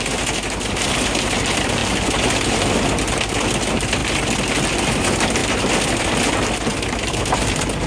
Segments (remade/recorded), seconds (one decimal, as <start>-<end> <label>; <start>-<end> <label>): 0.0-6.7 recorded; 6.7-7.9 remade